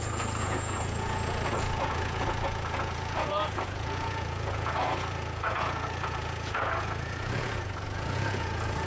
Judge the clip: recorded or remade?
remade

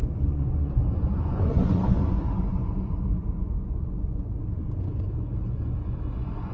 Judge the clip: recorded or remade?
remade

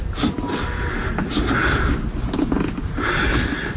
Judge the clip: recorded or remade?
recorded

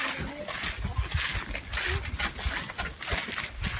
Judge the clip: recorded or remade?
recorded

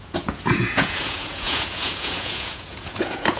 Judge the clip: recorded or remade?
remade